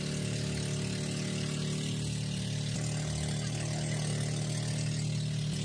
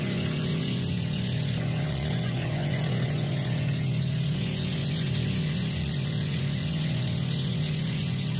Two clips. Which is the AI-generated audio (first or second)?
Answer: second